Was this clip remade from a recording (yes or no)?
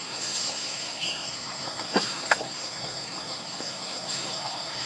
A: yes